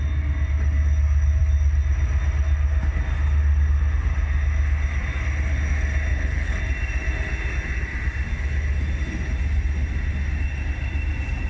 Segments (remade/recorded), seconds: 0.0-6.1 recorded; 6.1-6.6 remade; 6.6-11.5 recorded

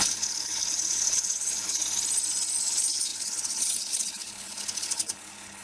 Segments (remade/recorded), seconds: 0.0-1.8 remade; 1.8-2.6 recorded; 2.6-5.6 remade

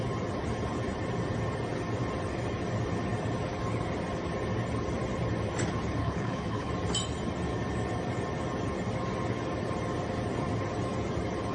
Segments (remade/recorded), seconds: 0.0-6.0 recorded; 6.0-6.7 remade; 6.7-11.5 recorded